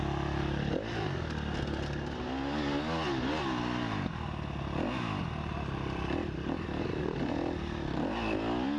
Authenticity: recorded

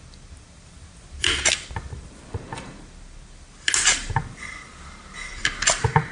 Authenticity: recorded